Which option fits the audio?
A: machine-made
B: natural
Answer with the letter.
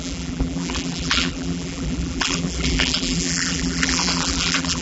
A